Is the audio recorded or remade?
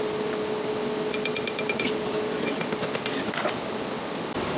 recorded